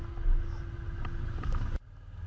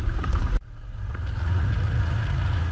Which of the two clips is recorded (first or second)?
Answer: first